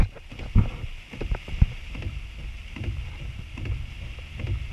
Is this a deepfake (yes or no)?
no